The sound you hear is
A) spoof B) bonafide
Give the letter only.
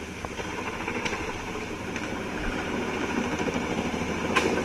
A